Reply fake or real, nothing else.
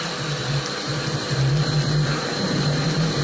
real